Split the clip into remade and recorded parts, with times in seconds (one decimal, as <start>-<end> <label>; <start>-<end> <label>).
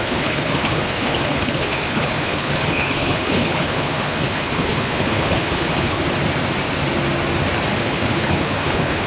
0.0-6.0 remade; 6.0-7.8 recorded; 7.8-9.1 remade